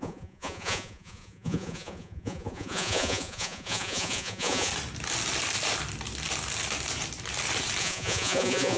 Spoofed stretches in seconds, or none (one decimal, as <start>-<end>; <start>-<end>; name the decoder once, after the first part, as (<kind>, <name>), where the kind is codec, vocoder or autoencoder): 0.0-4.7 (vocoder, Vocos); 7.8-8.8